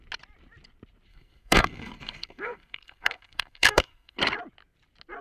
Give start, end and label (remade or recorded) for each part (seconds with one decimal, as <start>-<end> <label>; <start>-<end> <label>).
0.0-1.1 recorded; 1.1-4.2 remade; 4.2-5.2 recorded